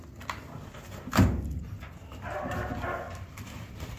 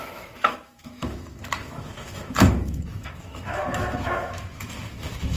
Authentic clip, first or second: first